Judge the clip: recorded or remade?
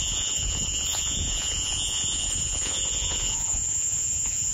remade